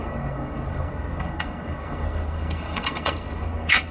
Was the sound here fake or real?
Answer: fake